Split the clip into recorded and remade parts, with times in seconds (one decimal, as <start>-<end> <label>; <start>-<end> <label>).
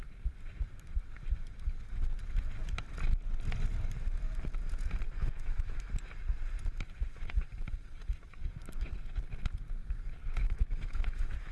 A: 0.0-5.2 recorded; 5.2-5.9 remade; 5.9-10.4 recorded; 10.4-11.5 remade